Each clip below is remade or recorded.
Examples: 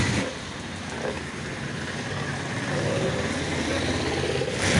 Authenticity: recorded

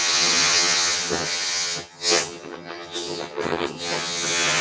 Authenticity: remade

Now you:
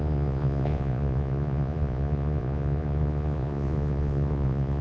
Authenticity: remade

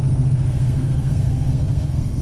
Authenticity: remade